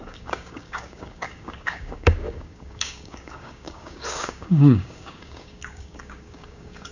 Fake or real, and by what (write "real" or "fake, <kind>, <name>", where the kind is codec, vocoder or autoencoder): fake, codec, DAC